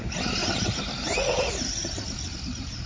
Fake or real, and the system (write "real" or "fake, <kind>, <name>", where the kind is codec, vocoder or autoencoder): real